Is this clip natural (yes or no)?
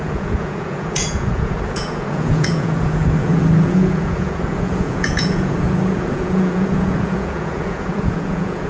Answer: no